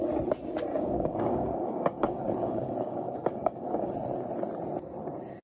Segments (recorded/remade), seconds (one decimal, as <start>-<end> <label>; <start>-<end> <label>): 0.0-0.7 recorded; 0.7-3.9 remade; 3.9-5.4 recorded